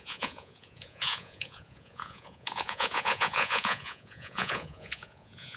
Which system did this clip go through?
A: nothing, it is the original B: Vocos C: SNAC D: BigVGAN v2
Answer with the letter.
B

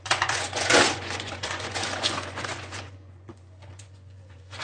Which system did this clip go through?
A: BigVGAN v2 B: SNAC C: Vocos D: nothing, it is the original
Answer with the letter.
C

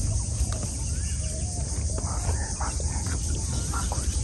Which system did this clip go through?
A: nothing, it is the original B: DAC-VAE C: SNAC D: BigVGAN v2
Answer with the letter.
A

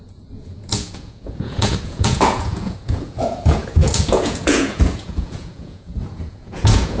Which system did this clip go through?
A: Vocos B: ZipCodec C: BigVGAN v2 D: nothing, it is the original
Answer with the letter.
A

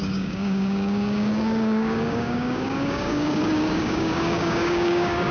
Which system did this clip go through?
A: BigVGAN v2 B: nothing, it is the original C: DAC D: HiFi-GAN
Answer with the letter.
C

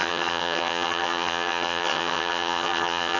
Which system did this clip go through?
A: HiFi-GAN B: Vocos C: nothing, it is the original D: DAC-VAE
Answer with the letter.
A